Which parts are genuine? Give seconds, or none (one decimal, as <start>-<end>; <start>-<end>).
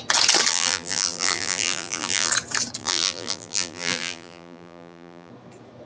0.0-0.5; 2.3-2.8; 5.3-5.9